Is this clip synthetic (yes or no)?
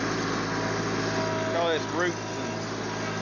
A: no